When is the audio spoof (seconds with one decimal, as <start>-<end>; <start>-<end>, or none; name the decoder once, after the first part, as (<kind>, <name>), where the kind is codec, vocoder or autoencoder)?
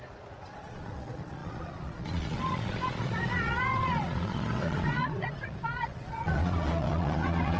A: 0.0-7.6 (vocoder, Vocos)